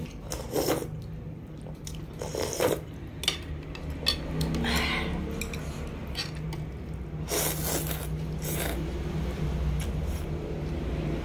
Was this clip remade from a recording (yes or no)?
no